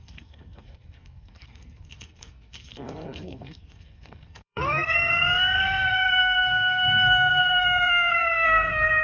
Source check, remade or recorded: remade